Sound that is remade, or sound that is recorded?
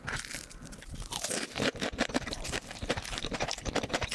remade